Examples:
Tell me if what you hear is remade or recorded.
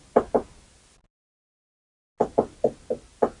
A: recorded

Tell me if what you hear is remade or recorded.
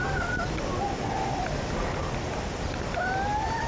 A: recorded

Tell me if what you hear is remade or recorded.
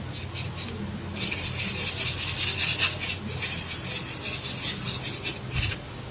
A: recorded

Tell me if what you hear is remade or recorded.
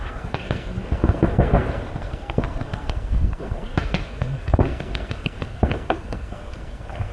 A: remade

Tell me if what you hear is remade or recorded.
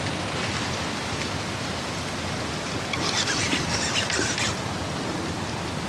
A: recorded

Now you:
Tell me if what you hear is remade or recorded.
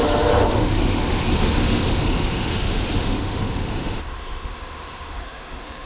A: remade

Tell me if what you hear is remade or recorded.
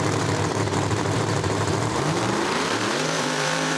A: remade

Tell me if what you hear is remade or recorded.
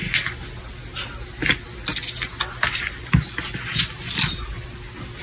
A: recorded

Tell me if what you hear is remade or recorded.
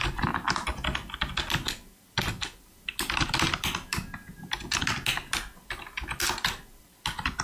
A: recorded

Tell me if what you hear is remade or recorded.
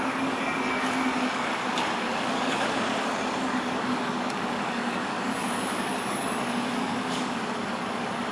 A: remade